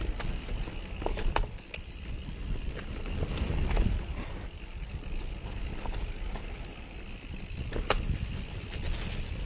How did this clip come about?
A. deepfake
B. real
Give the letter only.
B